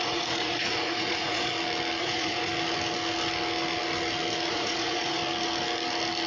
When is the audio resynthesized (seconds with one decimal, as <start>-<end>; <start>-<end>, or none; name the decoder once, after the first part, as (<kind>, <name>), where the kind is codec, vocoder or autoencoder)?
0.0-1.5 (vocoder, Vocos); 2.0-2.5; 4.5-5.2